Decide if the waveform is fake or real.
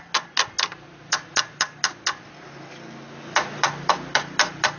real